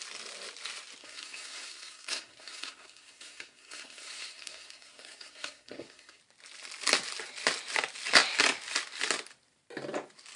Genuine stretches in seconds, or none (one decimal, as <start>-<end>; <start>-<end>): 0.0-1.0; 6.2-10.4